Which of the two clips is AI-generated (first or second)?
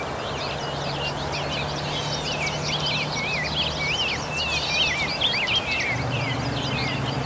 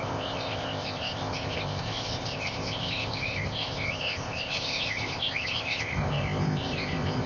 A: second